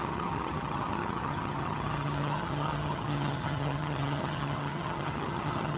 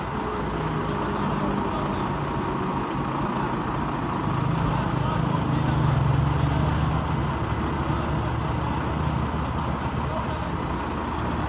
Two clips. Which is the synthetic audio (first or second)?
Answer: first